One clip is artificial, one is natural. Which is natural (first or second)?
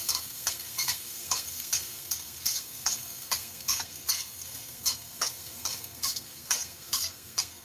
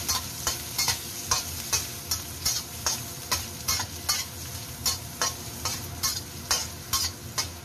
second